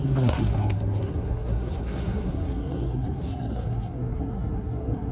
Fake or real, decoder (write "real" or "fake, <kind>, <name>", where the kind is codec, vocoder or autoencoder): fake, codec, SNAC